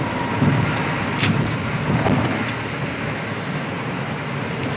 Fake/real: real